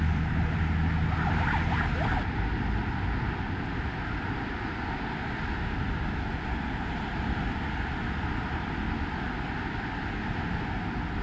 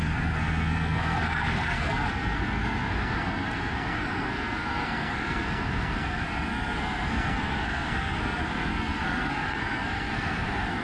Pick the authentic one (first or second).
first